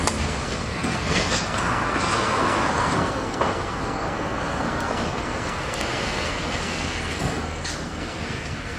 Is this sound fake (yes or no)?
yes